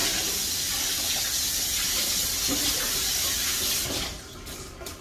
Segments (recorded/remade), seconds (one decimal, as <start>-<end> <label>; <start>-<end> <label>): 0.0-5.0 recorded

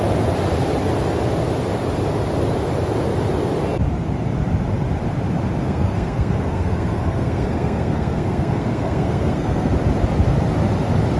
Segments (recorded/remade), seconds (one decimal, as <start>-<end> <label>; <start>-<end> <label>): 0.0-5.6 recorded; 5.6-9.7 remade; 9.7-11.2 recorded

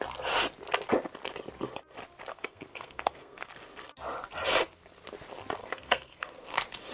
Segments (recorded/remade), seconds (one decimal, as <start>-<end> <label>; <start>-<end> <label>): 0.0-2.3 recorded; 2.3-3.5 remade; 3.5-5.6 recorded; 5.6-6.4 remade; 6.4-6.9 recorded

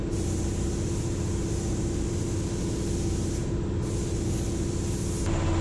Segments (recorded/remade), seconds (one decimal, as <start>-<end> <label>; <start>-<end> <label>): 0.0-5.6 recorded

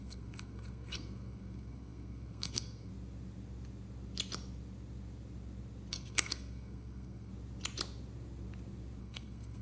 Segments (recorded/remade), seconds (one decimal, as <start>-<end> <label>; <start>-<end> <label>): 0.0-2.9 remade; 2.9-5.9 recorded; 5.9-7.3 remade; 7.3-9.0 recorded; 9.0-9.6 remade

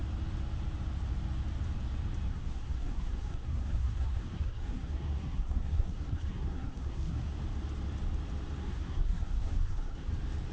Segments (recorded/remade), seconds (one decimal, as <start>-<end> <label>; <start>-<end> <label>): 0.0-2.3 recorded; 2.3-7.4 remade; 7.4-8.6 recorded; 8.6-10.1 remade; 10.1-10.5 recorded

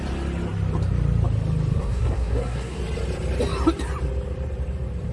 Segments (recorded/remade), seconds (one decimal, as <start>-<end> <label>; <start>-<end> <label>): 0.0-1.7 recorded; 1.7-2.8 remade; 2.8-5.1 recorded